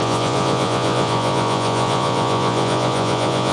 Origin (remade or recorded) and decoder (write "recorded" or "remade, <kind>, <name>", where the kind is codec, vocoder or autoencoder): remade, vocoder, Vocos